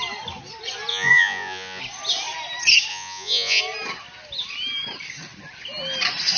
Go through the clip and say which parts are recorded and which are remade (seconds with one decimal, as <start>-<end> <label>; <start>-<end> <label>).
0.0-0.9 recorded; 0.9-1.8 remade; 1.8-2.9 recorded; 2.9-3.6 remade; 3.6-6.4 recorded